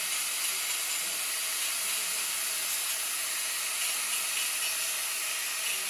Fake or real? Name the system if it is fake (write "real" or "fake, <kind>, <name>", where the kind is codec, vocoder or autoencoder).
real